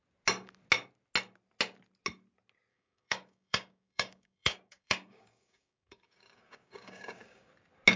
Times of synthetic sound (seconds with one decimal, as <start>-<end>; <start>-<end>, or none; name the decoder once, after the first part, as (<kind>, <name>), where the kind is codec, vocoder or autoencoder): 2.7-7.5 (codec, DAC)